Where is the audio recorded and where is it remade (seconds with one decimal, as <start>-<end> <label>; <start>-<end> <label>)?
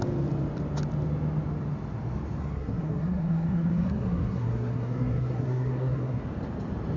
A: 0.0-2.4 recorded; 2.4-6.2 remade; 6.2-7.0 recorded